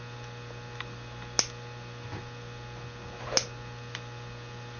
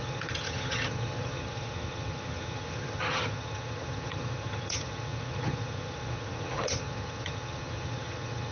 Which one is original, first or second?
first